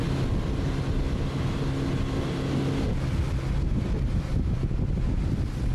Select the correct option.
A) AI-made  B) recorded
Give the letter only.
B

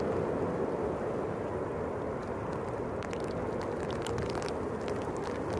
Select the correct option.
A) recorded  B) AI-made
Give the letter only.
A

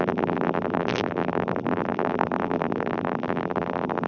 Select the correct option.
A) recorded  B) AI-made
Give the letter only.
B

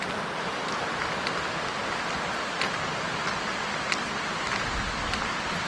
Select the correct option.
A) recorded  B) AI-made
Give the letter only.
A